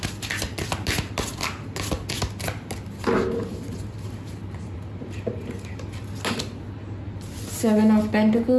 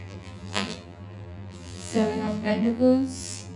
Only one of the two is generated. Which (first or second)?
second